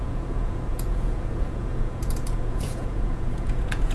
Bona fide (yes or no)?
no